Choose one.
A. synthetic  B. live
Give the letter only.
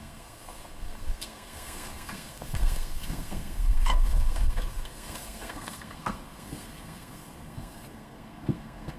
A